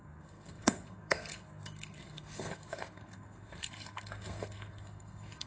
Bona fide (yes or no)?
no